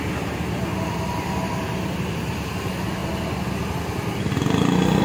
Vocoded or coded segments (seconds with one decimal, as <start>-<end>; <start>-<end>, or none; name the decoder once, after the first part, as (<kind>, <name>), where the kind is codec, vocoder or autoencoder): none

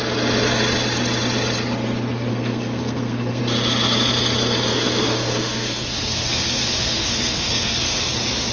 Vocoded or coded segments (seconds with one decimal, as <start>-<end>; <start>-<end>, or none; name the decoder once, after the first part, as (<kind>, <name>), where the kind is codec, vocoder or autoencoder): 2.3-3.4 (codec, SNAC); 4.7-8.1